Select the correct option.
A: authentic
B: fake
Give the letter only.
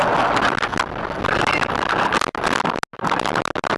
A